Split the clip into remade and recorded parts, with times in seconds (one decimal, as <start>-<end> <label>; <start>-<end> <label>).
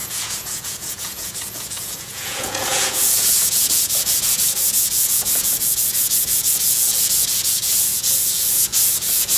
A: 0.0-9.4 remade